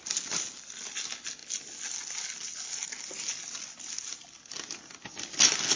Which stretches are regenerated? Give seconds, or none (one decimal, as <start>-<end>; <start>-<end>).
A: none